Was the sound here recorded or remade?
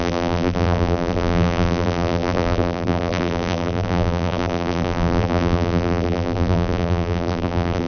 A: remade